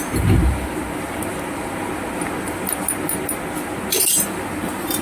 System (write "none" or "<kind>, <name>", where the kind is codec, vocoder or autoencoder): none